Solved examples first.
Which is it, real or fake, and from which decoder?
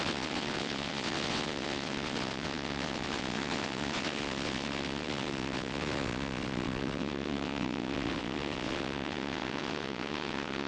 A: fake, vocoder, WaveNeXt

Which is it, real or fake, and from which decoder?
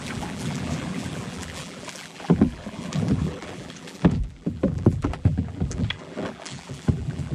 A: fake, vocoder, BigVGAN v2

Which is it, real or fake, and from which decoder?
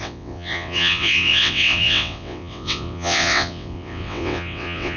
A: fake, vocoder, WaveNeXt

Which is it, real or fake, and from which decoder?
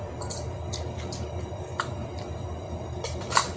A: real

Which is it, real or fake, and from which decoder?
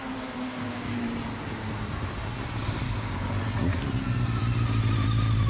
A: real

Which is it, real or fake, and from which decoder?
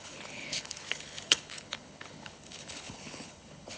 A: fake, codec, HILCodec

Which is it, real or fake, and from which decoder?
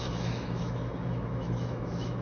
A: fake, autoencoder, DAC-VAE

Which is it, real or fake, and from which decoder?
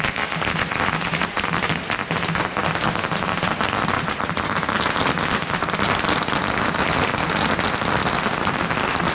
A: real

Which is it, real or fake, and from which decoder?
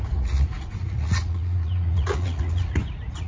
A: fake, vocoder, Vocos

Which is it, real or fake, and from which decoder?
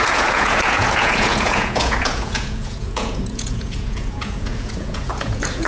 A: fake, vocoder, Vocos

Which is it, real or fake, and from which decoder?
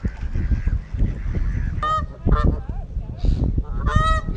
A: real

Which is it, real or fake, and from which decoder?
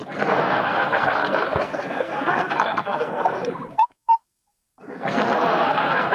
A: fake, codec, SNAC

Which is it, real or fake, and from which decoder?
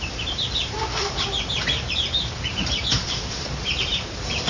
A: fake, vocoder, BigVGAN v2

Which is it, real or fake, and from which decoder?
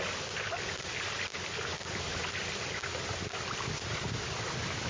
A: real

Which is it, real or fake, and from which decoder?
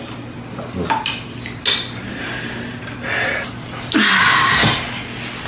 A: real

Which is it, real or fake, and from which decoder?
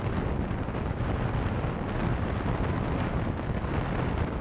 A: real